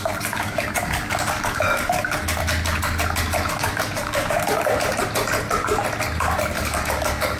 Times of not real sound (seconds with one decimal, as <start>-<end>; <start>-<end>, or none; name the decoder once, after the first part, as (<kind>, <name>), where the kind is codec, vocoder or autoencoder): 0.0-2.4 (codec, DAC); 3.5-5.0; 6.5-7.4